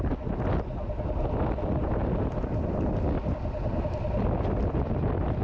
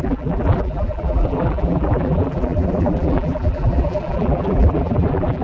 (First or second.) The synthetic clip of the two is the second